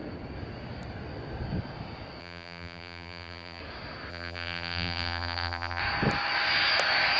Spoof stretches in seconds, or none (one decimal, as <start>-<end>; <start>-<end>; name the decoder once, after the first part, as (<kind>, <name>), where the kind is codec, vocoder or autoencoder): 2.2-3.6 (vocoder, BigVGAN v2); 4.1-5.8